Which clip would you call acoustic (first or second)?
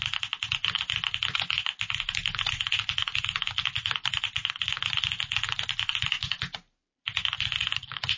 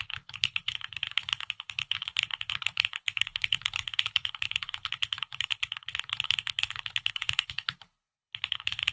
first